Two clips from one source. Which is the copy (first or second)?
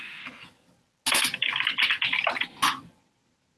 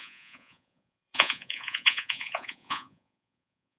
second